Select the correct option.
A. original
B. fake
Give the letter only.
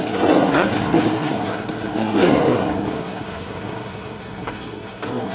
B